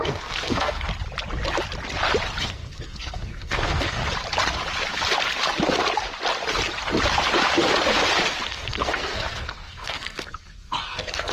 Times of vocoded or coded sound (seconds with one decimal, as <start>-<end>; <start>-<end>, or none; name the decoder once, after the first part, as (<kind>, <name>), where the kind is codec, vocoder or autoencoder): 0.0-0.9 (codec, SNAC); 2.4-4.0; 8.5-11.3